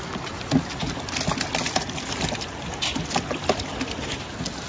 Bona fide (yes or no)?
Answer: yes